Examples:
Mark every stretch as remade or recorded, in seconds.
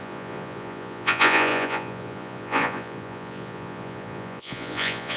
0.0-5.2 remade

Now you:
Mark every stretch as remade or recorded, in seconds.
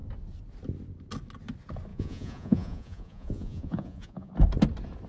0.0-1.9 recorded; 1.9-4.3 remade; 4.3-5.1 recorded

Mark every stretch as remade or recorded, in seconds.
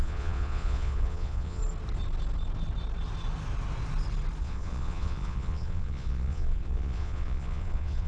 0.0-1.6 remade; 1.6-4.4 recorded; 4.4-8.1 remade